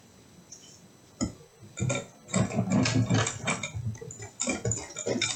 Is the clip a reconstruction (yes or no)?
no